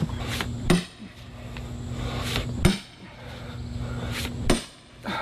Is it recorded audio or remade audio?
recorded